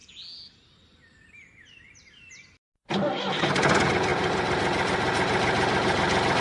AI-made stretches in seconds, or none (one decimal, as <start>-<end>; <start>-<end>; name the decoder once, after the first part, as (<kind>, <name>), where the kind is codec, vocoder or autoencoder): none